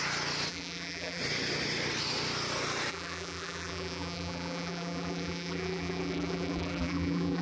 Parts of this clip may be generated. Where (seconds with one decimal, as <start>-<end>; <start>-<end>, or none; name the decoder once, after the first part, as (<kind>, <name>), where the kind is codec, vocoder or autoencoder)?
0.5-1.2 (vocoder, BigVGAN v2); 2.9-7.4